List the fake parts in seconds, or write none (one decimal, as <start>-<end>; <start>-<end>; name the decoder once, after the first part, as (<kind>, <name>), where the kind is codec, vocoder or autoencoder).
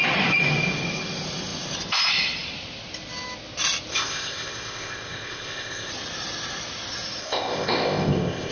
3.9-5.9 (codec, ZipCodec); 7.2-8.5